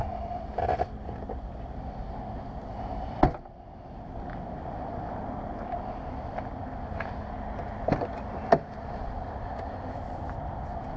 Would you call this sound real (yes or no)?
yes